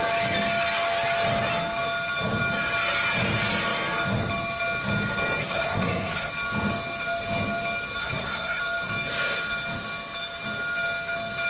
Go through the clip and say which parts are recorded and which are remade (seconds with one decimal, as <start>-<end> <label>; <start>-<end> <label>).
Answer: 0.0-5.4 recorded; 5.4-6.3 remade; 6.3-8.0 recorded; 8.0-8.6 remade; 8.6-11.5 recorded